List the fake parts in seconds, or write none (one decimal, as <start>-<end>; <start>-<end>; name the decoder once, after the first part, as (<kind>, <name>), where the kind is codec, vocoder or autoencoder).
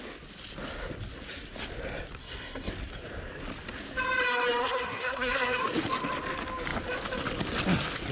2.2-2.7 (codec, SNAC); 4.6-5.6